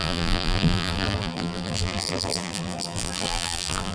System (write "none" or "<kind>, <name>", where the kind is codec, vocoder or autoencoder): vocoder, BigVGAN v2